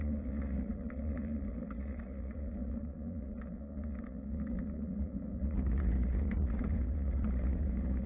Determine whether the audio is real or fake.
fake